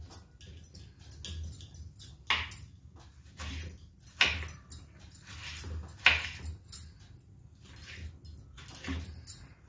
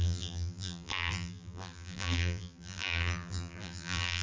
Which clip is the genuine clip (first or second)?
first